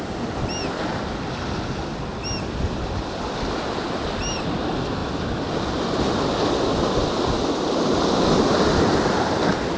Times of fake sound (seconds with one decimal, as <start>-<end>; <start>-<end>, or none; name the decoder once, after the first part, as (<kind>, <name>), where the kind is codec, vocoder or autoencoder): none